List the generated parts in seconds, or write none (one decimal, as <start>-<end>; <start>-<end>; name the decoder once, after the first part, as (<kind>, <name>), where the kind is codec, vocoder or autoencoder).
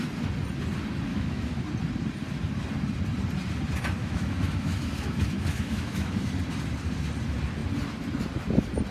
1.1-1.6 (autoencoder, DAC-VAE); 4.0-6.3